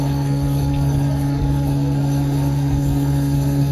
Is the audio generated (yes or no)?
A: yes